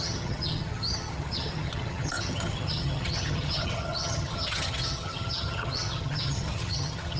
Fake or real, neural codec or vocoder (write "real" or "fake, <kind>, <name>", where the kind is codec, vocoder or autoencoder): fake, vocoder, HiFi-GAN